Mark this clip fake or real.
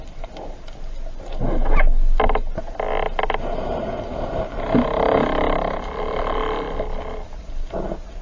real